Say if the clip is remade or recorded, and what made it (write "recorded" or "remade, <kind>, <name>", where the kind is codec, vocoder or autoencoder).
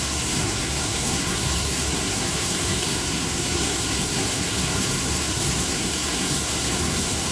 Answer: remade, codec, SNAC